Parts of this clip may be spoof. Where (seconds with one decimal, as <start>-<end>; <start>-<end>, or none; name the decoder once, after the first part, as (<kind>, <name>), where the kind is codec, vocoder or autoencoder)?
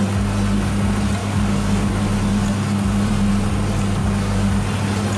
1.2-1.9 (codec, DAC); 4.0-4.5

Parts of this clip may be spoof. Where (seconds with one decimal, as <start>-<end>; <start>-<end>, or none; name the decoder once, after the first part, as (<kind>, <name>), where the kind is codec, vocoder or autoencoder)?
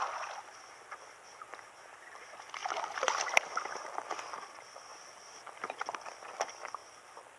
none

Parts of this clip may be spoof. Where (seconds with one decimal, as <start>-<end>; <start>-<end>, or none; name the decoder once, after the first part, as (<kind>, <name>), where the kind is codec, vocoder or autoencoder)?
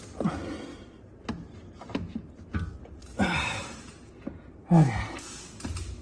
0.7-2.3 (vocoder, BigVGAN v2); 3.0-4.1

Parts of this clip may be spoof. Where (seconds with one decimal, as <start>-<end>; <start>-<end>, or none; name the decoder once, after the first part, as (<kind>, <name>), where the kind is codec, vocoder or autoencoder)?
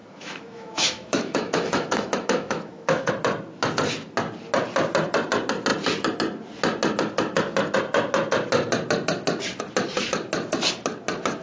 0.0-3.1 (autoencoder, DAC-VAE)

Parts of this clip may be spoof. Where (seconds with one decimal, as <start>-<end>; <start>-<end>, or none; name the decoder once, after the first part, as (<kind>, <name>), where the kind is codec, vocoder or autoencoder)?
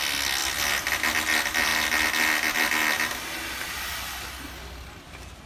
none